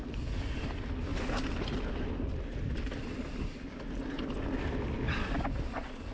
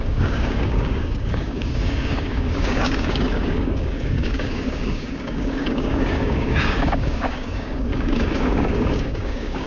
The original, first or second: first